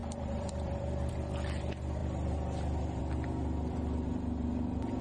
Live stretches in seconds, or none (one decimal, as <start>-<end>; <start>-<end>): 1.1-5.0